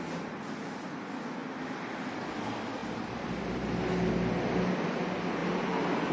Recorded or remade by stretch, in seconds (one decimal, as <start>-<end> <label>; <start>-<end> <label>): 0.0-2.8 recorded; 2.8-3.6 remade; 3.6-6.1 recorded